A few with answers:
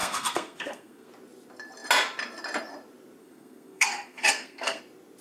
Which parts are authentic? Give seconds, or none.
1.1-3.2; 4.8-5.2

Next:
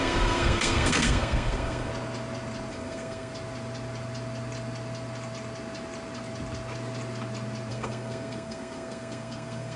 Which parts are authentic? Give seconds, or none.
1.9-2.7; 3.3-7.7

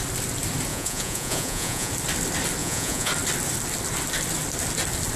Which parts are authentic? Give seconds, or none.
0.0-0.7; 1.9-2.6; 3.1-5.2

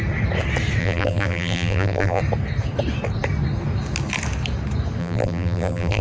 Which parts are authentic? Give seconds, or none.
0.0-0.8; 2.2-5.0

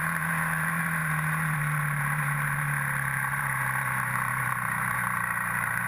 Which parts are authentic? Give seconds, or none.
none

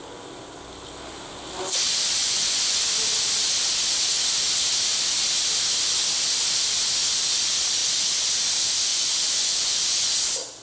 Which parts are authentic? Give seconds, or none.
0.0-2.2; 2.8-8.9; 10.1-10.6